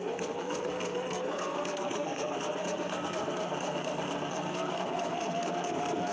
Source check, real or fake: fake